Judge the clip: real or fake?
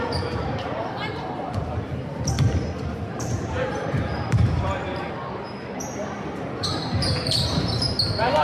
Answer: fake